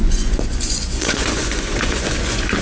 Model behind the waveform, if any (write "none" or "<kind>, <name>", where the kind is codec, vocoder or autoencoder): vocoder, Vocos